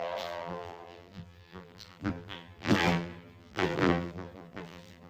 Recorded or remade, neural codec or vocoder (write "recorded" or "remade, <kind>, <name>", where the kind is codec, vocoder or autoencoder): remade, vocoder, BigVGAN v2